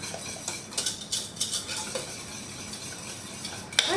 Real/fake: real